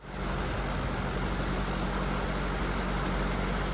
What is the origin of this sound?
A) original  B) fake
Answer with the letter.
A